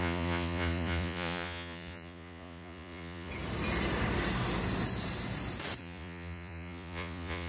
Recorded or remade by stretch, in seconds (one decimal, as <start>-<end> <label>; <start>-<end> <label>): 0.0-3.3 remade; 3.3-5.8 recorded; 5.8-7.5 remade